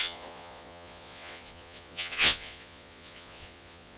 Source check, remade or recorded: remade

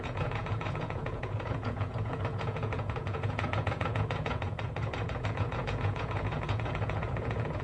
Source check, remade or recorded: remade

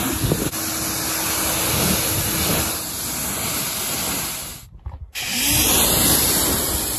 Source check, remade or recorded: recorded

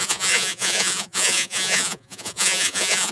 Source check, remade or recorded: remade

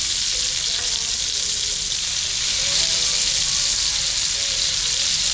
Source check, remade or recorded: recorded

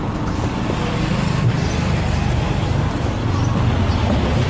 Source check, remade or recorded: recorded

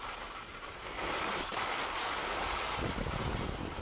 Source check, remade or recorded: recorded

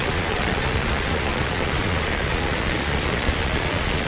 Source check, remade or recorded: remade